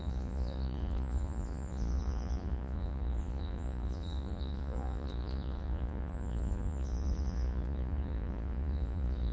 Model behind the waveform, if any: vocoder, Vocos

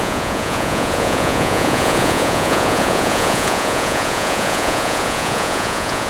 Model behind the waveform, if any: vocoder, Vocos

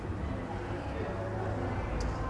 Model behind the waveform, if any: none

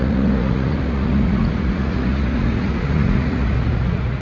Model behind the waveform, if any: vocoder, Vocos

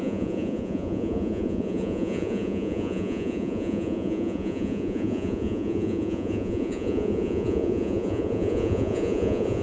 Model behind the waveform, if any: vocoder, Vocos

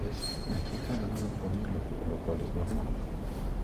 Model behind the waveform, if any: none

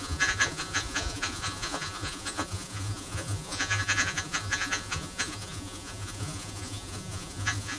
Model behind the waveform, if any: vocoder, Vocos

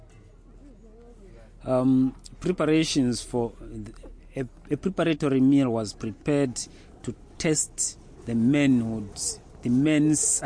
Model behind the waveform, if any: none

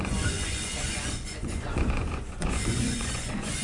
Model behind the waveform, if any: vocoder, Vocos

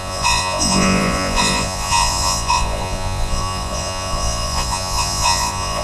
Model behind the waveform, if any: vocoder, Vocos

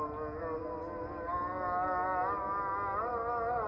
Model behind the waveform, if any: none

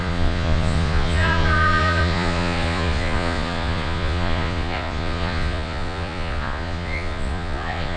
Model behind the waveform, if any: vocoder, Vocos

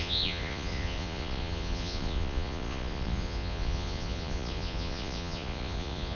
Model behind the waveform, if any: vocoder, Vocos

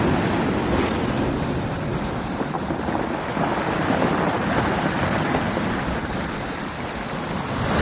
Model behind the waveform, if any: none